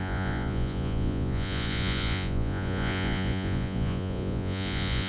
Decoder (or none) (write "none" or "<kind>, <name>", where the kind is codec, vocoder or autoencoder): vocoder, Vocos